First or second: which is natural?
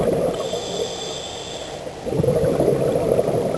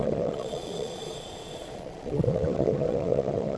first